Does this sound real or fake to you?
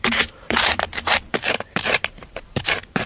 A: fake